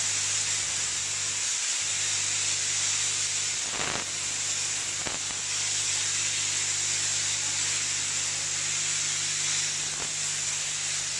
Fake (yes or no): no